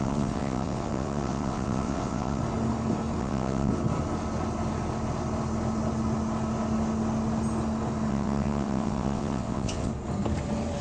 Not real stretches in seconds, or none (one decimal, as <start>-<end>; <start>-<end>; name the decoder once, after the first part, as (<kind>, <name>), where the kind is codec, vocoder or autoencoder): 0.0-2.4 (vocoder, WaveNeXt); 3.2-3.7; 8.1-9.9